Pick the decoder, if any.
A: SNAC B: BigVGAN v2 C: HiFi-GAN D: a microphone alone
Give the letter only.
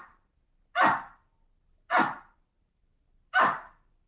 D